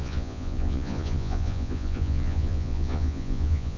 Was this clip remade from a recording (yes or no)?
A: yes